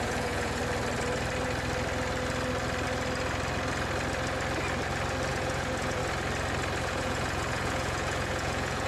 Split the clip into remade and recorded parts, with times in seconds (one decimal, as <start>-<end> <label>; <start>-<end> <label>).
0.0-0.6 remade; 0.6-5.3 recorded; 5.3-6.0 remade; 6.0-6.8 recorded; 6.8-8.9 remade